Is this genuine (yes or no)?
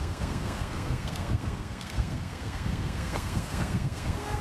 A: no